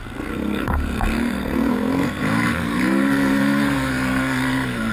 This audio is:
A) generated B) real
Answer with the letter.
A